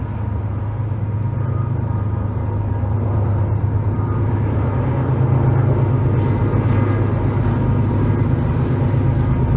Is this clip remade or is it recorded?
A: recorded